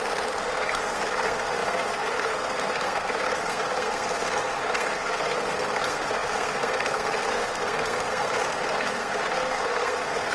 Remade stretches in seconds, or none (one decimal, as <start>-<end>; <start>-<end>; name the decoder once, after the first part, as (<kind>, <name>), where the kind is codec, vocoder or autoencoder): 0.0-10.3 (codec, SNAC)